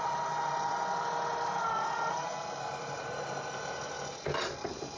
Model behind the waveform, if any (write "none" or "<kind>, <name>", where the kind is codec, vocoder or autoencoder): none